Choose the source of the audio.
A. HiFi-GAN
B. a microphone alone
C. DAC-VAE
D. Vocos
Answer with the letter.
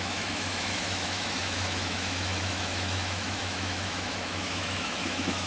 C